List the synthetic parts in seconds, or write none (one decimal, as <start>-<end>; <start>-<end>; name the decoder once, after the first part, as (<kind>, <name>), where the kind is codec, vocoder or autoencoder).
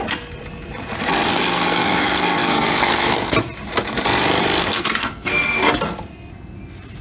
1.3-3.3 (codec, SNAC); 4.7-5.6